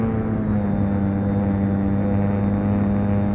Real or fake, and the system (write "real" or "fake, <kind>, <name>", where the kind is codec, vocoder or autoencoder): real